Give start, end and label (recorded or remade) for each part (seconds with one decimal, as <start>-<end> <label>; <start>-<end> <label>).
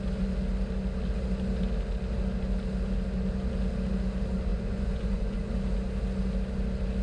0.0-4.5 recorded; 4.5-5.5 remade; 5.5-7.0 recorded